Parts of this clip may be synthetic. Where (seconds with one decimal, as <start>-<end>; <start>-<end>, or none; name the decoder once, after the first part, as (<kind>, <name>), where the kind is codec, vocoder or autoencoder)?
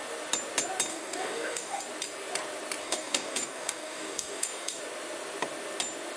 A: 0.9-1.8 (codec, DAC); 2.8-4.8